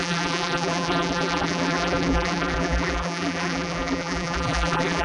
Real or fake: fake